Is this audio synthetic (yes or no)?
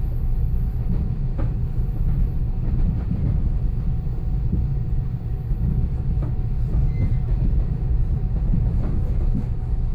no